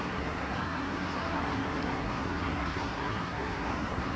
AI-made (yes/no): yes